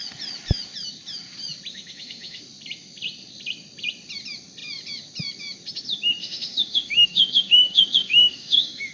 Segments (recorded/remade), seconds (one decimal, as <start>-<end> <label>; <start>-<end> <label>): 0.0-1.7 recorded; 1.7-2.4 remade; 2.4-6.2 recorded; 6.2-8.9 remade